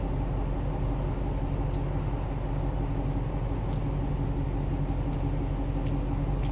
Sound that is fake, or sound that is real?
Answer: real